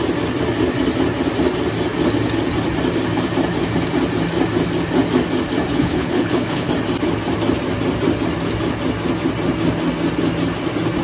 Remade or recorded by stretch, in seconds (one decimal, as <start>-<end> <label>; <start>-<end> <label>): 0.0-5.7 recorded; 5.7-6.7 remade; 6.7-11.0 recorded